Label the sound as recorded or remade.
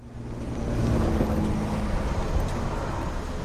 recorded